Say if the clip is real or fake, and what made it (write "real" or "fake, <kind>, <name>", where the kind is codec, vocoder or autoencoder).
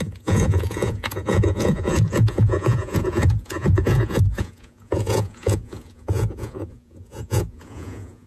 fake, vocoder, Vocos